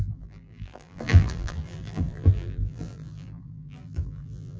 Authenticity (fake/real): fake